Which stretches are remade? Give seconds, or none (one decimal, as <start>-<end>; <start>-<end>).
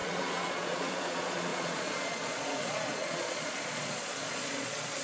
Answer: 0.0-5.0